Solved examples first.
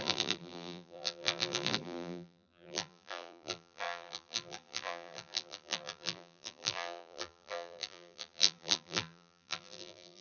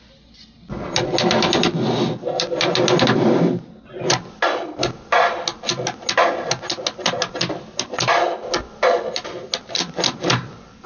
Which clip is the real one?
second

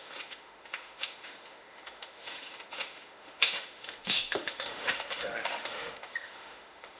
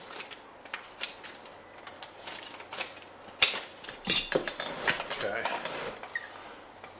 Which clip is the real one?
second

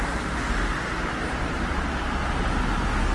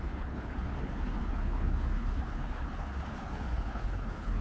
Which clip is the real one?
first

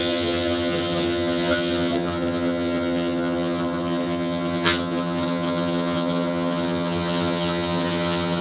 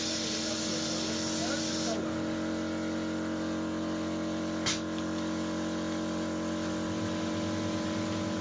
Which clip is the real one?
second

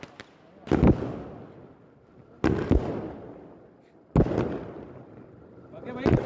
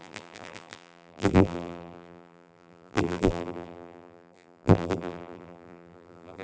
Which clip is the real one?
first